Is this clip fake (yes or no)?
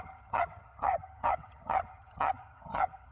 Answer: yes